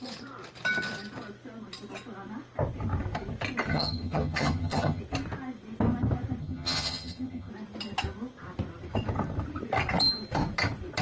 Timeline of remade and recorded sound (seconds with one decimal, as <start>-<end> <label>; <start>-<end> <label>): 0.0-3.7 recorded; 3.7-5.0 remade; 5.0-6.4 recorded; 6.4-7.5 remade; 7.5-11.0 recorded